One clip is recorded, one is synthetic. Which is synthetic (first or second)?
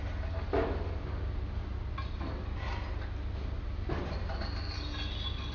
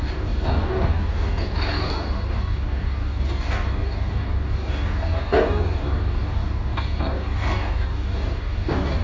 second